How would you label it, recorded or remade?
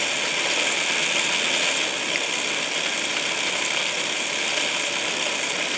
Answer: recorded